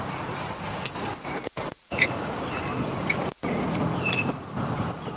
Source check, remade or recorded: remade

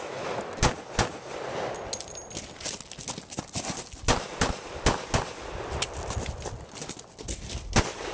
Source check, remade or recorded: recorded